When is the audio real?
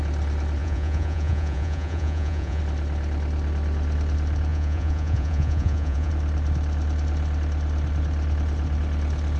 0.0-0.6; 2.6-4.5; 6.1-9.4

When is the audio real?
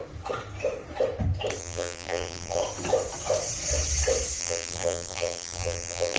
0.0-1.6; 2.6-4.4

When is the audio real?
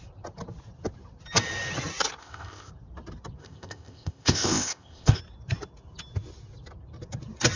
0.0-2.2; 2.7-3.4; 5.2-7.6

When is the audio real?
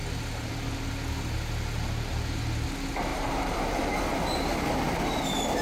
0.0-3.1; 4.0-5.6